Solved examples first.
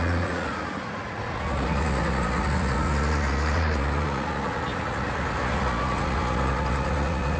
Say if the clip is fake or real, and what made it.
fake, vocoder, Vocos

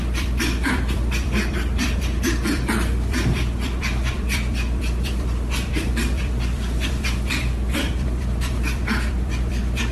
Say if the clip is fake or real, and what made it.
fake, vocoder, BigVGAN v2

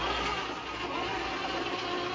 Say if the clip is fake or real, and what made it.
real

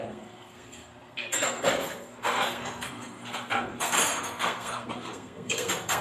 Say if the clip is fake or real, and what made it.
fake, codec, SNAC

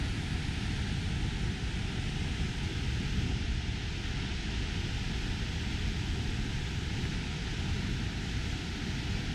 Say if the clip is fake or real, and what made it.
real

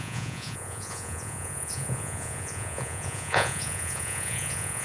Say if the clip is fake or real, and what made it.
fake, vocoder, Vocos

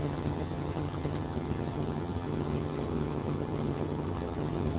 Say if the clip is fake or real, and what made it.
fake, vocoder, HiFi-GAN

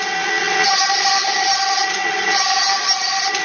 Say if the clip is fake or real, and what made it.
real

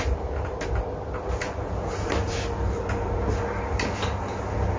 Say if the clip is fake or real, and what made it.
real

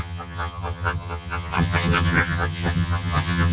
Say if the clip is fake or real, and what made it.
fake, vocoder, HiFi-GAN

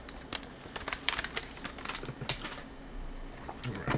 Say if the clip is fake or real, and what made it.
real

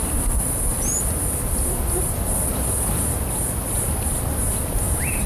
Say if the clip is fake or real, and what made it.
real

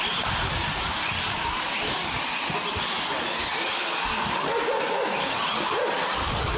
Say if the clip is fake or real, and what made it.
real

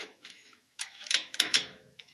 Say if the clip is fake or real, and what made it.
fake, autoencoder, DAC-VAE